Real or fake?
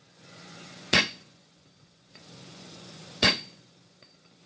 fake